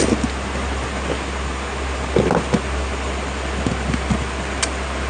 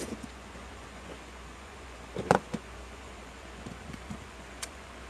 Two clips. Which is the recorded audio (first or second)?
first